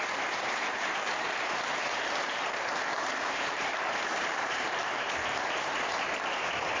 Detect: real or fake fake